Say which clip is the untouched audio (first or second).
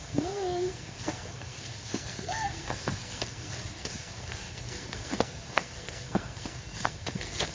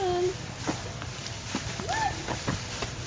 second